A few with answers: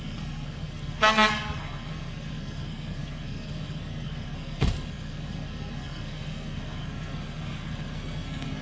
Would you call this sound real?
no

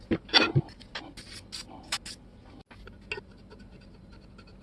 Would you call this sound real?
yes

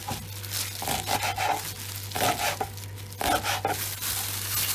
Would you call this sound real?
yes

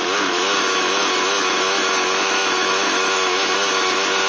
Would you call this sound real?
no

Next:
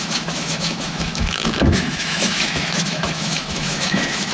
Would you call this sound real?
no